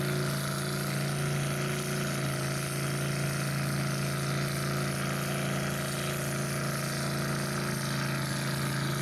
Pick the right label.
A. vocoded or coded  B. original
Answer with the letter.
B